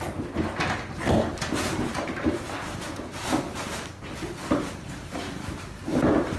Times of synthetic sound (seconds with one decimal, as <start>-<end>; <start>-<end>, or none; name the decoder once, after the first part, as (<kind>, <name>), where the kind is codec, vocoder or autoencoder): 1.3-2.4 (vocoder, BigVGAN v2)